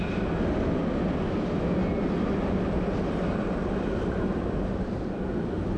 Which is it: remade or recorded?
recorded